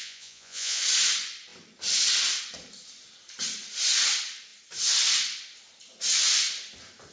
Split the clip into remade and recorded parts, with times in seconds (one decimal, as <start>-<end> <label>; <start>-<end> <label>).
0.0-0.8 remade; 0.8-7.1 recorded